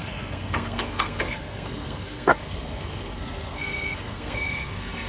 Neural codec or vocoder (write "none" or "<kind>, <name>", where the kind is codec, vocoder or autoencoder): codec, SNAC